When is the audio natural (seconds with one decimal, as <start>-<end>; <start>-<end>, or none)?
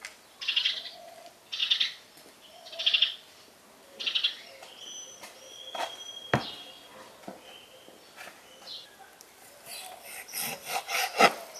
0.0-11.6